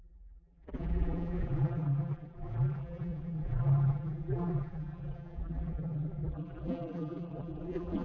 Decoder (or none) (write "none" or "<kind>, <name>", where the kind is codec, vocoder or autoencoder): vocoder, BigVGAN v2